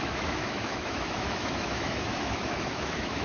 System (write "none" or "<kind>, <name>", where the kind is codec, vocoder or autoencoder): autoencoder, DAC-VAE